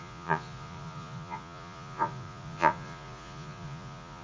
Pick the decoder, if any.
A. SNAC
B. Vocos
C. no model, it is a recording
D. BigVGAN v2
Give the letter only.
B